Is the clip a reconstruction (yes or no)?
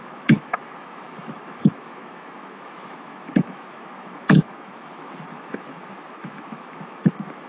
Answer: yes